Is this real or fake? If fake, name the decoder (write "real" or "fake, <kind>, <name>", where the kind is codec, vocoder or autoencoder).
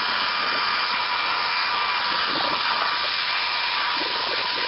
real